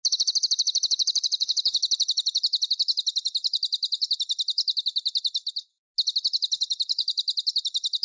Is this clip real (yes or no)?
yes